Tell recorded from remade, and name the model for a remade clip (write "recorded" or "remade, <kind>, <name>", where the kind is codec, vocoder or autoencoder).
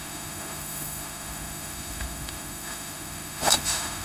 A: remade, autoencoder, DAC-VAE